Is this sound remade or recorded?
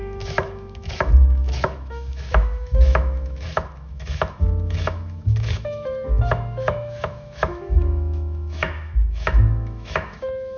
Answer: remade